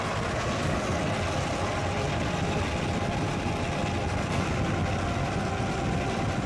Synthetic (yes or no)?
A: no